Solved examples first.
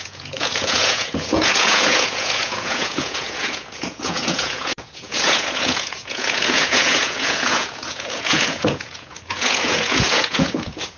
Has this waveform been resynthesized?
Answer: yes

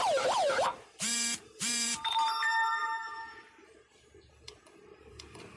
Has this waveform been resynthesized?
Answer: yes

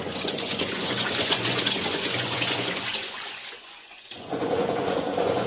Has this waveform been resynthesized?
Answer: yes